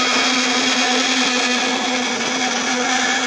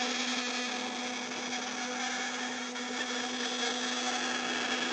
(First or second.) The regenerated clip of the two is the first